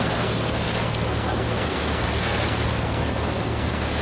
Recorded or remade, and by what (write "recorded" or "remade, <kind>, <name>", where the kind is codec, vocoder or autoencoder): remade, codec, SNAC